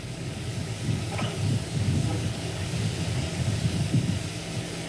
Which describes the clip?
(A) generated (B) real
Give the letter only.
A